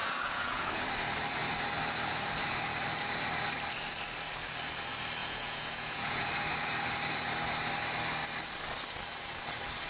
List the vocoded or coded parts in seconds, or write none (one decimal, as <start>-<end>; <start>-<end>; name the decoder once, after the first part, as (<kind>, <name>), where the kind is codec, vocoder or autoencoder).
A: 0.0-0.7 (vocoder, Vocos); 5.2-6.3